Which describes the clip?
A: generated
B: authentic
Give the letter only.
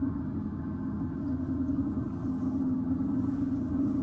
A